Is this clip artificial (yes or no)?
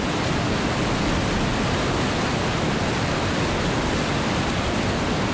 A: no